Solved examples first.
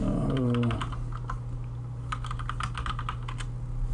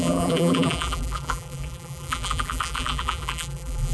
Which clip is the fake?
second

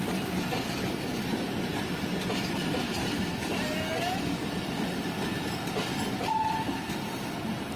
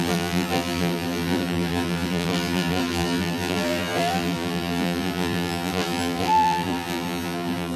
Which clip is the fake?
second